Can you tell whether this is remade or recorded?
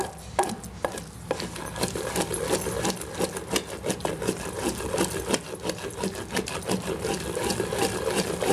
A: recorded